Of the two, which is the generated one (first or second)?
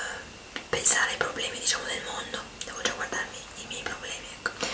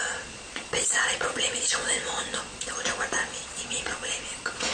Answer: second